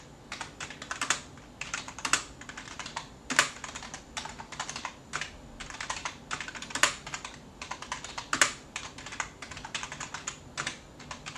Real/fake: real